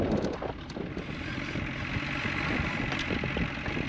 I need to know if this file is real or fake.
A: real